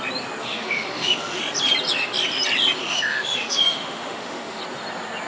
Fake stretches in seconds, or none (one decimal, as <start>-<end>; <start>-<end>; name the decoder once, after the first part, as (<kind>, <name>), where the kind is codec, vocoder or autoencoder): 0.4-1.4 (autoencoder, DAC-VAE); 2.8-4.6